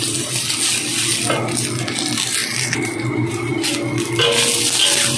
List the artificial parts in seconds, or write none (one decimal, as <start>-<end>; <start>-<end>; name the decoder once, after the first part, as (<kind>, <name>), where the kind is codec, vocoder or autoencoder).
none

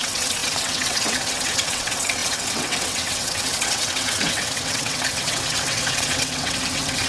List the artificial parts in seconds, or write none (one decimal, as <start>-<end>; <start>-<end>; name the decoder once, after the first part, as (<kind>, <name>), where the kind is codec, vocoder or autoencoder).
0.0-7.1 (vocoder, WaveNeXt)